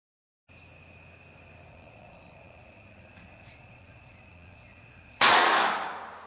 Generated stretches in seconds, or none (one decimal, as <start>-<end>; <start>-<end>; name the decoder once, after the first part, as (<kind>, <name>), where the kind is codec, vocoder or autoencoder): 1.7-5.5 (vocoder, Vocos)